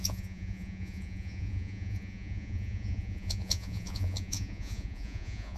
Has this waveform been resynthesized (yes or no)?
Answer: yes